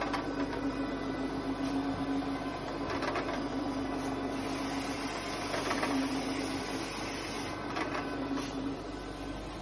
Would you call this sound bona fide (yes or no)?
yes